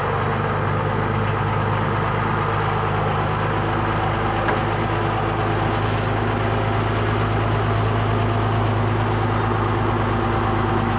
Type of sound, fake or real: real